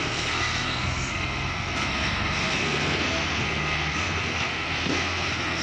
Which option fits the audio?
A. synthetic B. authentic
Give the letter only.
A